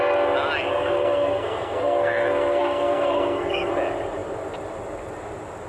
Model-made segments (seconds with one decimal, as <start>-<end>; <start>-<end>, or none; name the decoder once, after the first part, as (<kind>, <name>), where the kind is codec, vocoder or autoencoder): 0.7-3.7 (codec, SNAC)